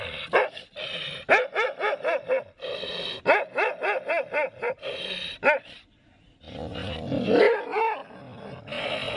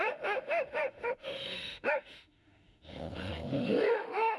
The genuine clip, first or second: first